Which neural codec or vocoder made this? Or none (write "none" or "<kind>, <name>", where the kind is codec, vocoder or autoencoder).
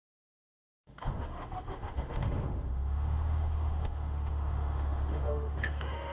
autoencoder, DAC-VAE